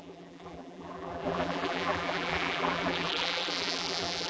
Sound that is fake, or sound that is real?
fake